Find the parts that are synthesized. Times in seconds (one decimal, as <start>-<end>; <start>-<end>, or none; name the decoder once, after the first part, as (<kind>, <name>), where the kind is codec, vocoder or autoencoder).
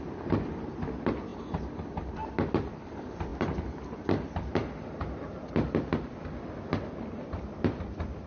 none